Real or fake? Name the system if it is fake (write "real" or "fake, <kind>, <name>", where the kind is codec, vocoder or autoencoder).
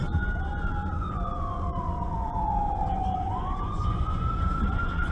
fake, vocoder, Vocos